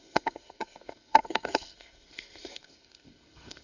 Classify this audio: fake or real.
fake